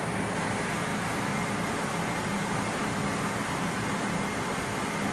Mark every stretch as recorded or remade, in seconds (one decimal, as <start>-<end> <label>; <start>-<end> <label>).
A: 0.0-0.9 remade; 0.9-3.6 recorded; 3.6-5.1 remade